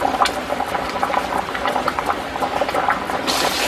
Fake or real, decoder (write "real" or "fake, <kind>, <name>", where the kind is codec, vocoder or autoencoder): real